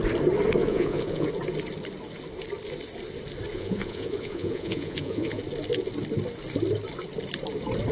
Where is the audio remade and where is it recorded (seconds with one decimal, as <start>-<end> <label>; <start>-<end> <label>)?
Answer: 0.0-0.6 recorded; 0.6-1.3 remade; 1.3-3.5 recorded; 3.5-5.4 remade; 5.4-7.9 recorded